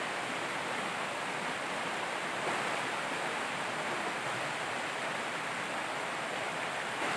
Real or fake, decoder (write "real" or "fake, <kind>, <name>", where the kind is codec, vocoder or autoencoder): real